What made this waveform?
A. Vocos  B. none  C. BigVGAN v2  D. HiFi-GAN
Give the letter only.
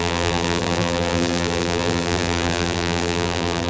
C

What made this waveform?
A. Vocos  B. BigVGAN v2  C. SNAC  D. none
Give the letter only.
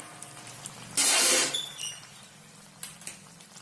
D